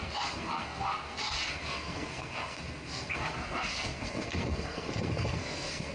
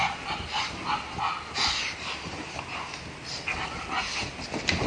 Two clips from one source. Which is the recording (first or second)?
second